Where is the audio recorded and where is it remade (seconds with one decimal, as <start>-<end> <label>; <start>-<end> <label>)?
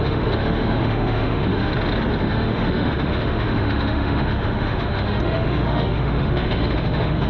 0.0-1.7 remade; 1.7-2.2 recorded; 2.2-7.3 remade